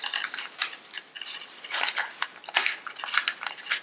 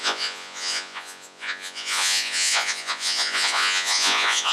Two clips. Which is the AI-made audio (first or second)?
second